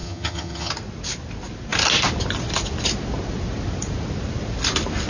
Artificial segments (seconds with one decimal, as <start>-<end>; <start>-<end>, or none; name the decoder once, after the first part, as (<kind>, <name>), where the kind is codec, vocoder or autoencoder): 0.0-0.7 (vocoder, HiFi-GAN)